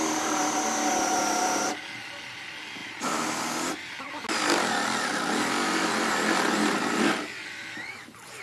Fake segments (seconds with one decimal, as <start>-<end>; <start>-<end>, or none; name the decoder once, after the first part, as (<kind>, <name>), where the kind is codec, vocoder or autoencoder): none